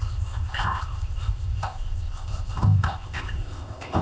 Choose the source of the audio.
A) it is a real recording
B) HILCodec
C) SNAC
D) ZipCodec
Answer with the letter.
D